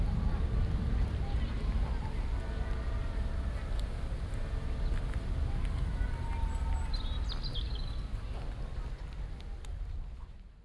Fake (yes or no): no